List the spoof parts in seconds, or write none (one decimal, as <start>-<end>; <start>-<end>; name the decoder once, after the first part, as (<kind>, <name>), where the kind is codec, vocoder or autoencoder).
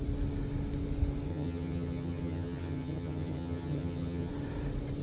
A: 1.3-4.3 (vocoder, HiFi-GAN)